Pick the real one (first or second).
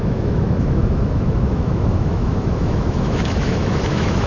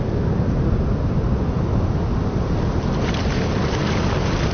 second